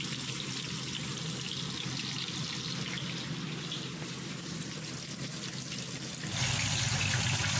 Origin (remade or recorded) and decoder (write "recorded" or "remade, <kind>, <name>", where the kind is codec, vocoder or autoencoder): recorded